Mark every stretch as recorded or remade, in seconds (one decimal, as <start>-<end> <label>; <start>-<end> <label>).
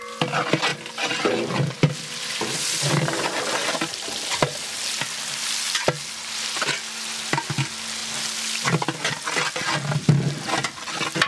0.0-0.7 recorded; 0.7-4.6 remade; 4.6-11.3 recorded